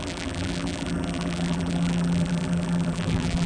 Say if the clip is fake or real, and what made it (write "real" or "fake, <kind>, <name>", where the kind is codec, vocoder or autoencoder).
fake, vocoder, BigVGAN v2